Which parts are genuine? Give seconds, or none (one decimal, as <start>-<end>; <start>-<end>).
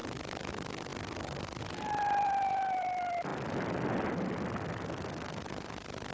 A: 3.3-6.1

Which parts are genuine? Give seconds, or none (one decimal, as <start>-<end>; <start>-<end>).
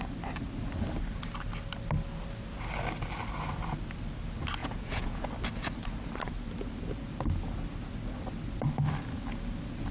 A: 0.0-4.6; 5.2-9.9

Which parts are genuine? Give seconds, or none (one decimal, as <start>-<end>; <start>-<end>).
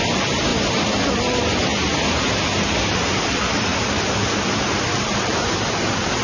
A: 0.5-1.1; 1.7-3.2; 3.7-5.5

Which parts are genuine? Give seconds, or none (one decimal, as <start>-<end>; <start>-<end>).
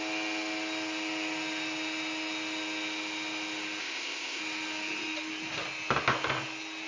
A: 0.0-3.8; 4.4-6.9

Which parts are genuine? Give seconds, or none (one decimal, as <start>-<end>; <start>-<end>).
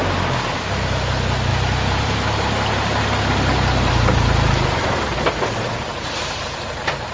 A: 0.0-1.5; 5.2-6.2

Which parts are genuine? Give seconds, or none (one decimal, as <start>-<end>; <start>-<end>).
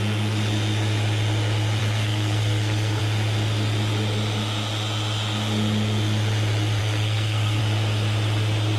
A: 0.0-1.8; 3.0-6.8; 7.6-8.8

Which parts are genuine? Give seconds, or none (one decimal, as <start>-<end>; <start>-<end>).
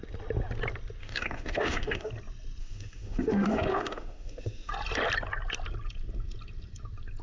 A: 0.0-1.0; 2.1-2.6; 4.7-7.2